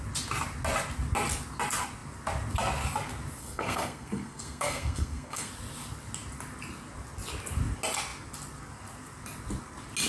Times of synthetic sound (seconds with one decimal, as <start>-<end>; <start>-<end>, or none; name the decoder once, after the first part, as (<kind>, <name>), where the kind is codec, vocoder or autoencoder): 3.4-5.5 (codec, SNAC)

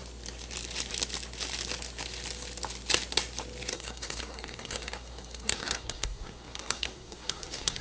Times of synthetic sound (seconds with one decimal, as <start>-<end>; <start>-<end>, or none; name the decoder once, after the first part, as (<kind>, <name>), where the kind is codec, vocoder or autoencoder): 3.7-7.8 (codec, SNAC)

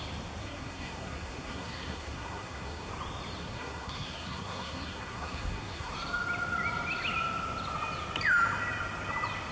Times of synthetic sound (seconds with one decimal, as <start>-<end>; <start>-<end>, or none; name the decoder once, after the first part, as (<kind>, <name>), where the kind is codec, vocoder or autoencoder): 0.4-2.9 (codec, SNAC); 3.4-5.9

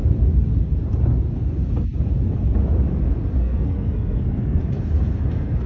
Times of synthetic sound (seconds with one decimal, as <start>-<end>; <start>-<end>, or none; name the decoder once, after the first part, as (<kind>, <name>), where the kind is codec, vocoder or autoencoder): 3.4-4.6 (codec, SNAC); 5.3-5.7

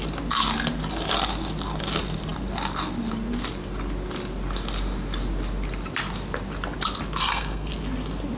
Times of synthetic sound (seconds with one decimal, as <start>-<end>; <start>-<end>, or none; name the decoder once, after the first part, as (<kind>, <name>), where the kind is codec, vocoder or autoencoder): 7.2-7.7 (codec, SNAC)

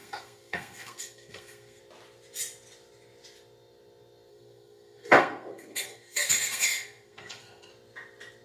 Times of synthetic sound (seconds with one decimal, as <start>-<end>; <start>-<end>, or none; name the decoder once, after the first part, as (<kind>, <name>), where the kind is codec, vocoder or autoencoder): 0.0-1.8 (codec, SNAC); 4.3-7.7

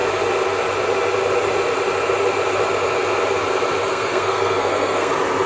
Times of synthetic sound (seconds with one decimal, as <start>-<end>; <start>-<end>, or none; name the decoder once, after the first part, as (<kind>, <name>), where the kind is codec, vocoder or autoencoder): 3.9-5.1 (codec, SNAC)

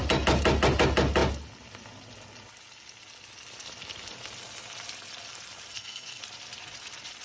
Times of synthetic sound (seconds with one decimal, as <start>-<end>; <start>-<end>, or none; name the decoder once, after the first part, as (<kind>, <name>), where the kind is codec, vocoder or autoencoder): 5.7-6.2 (codec, SNAC)